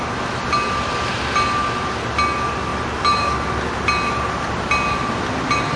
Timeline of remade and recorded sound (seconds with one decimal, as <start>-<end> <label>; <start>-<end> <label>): 0.0-5.8 recorded